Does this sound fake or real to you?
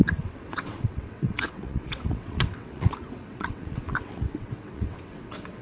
fake